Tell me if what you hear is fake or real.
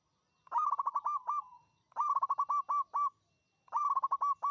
real